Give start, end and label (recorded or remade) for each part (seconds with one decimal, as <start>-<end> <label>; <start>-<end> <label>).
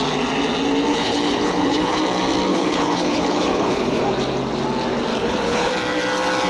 0.0-0.9 recorded; 0.9-2.0 remade; 2.0-2.5 recorded; 2.5-4.0 remade; 4.0-5.1 recorded; 5.1-5.7 remade; 5.7-6.5 recorded